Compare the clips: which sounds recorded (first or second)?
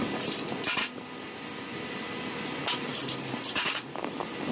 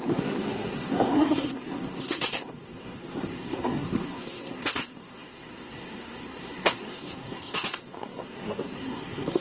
first